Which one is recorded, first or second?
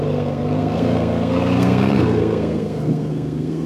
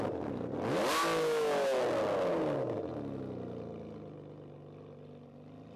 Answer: second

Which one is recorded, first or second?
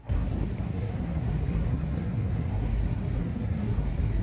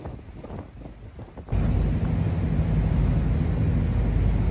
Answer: second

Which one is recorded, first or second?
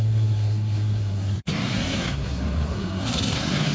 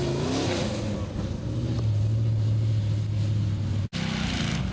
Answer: second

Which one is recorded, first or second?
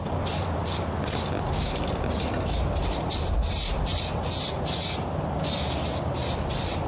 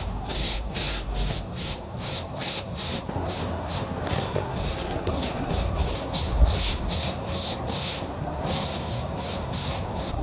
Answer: first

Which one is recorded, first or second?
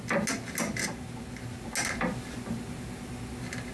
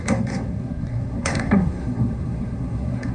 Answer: first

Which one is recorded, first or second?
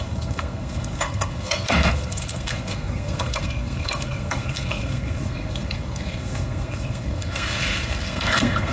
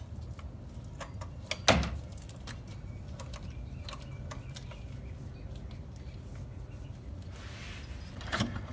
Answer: second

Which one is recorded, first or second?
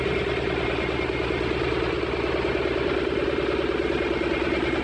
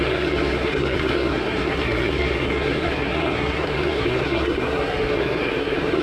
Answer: first